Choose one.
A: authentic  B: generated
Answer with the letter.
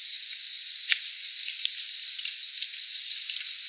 A